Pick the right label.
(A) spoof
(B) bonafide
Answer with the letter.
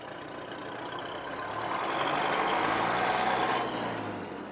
B